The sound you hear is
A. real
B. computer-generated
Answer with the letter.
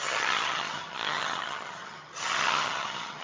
B